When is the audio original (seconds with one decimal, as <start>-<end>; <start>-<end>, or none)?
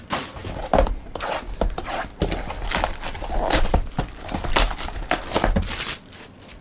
0.0-6.6